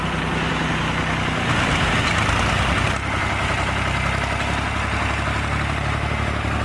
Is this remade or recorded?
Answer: recorded